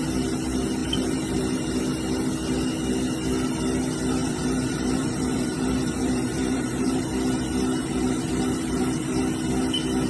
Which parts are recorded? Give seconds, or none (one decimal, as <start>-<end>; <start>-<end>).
0.0-0.8; 1.8-4.2; 7.0-7.8; 9.2-10.1